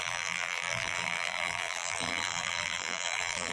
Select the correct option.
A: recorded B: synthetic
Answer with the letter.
B